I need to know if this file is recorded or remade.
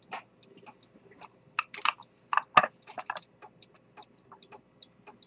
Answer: recorded